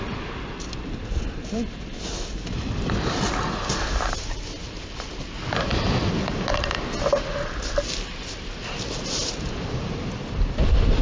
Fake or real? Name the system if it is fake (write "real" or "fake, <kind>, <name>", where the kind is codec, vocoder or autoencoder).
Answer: real